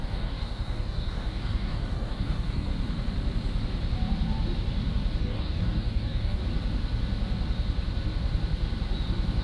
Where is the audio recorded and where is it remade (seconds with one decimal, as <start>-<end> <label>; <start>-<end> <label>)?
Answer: 0.0-2.7 remade; 2.7-5.2 recorded; 5.2-6.4 remade; 6.4-9.4 recorded